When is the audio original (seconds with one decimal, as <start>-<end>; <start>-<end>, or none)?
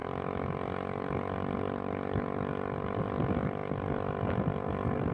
0.0-5.1